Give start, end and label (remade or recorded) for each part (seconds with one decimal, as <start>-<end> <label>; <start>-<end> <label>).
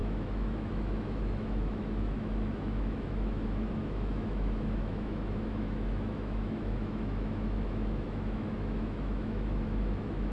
0.0-10.3 remade